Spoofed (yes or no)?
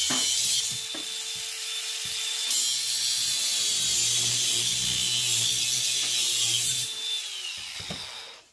no